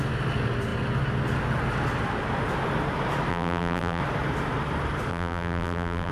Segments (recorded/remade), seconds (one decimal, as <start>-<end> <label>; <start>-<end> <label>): 0.0-3.3 recorded; 3.3-4.0 remade; 4.0-5.1 recorded; 5.1-6.1 remade